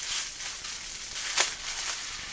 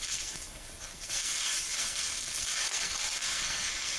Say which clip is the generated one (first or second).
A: second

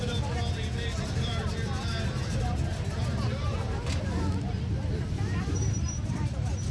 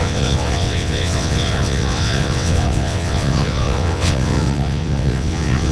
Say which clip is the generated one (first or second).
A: second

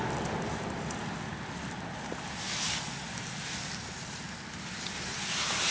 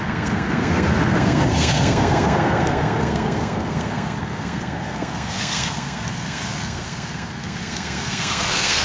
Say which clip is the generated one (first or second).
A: second